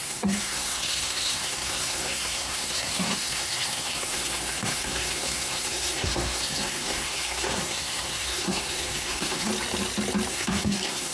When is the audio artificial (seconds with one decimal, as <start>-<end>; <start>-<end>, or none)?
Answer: 0.0-9.5; 10.3-11.1